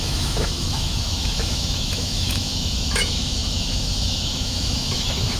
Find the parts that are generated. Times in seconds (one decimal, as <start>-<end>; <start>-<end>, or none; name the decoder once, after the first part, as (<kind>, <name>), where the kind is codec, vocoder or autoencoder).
0.0-5.4 (autoencoder, DAC-VAE)